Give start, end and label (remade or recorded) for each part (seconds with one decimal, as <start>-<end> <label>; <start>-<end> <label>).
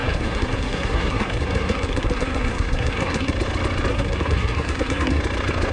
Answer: 0.0-3.3 remade; 3.3-3.9 recorded; 3.9-5.2 remade; 5.2-5.7 recorded